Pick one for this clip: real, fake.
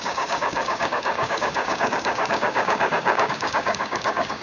fake